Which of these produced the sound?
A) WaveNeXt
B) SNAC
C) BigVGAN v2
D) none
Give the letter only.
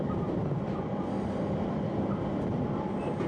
D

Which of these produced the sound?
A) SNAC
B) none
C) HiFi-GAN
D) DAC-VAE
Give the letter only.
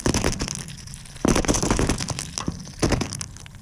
B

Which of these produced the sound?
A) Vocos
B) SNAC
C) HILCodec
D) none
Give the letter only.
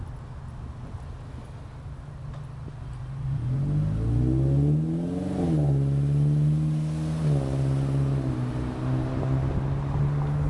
D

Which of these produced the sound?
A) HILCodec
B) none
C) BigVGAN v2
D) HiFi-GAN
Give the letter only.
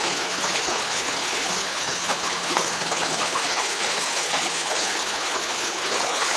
A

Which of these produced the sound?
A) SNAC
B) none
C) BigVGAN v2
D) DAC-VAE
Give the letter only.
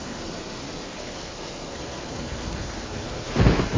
A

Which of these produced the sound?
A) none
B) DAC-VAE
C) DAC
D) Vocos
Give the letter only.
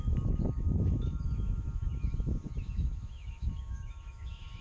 B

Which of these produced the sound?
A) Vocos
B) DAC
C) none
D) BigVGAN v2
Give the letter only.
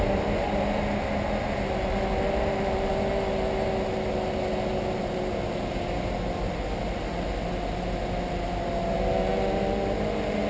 C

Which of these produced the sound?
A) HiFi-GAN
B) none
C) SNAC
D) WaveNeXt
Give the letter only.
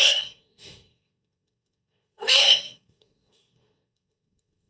C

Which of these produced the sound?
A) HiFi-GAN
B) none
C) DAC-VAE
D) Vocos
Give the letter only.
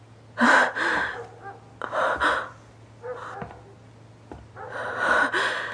B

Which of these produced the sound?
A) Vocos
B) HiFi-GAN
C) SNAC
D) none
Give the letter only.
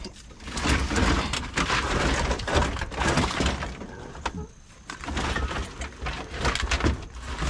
D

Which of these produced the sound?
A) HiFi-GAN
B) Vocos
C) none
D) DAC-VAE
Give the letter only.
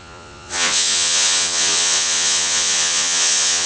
B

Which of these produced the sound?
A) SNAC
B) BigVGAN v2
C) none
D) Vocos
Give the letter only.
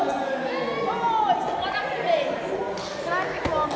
C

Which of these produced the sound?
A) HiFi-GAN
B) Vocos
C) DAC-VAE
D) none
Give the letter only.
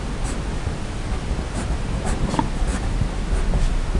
D